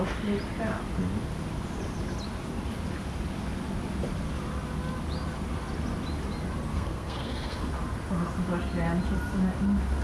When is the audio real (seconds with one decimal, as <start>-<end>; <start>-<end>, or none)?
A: 0.0-6.7; 7.7-10.0